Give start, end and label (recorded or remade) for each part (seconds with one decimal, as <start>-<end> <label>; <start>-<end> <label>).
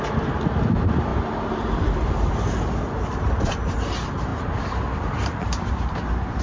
0.0-6.4 remade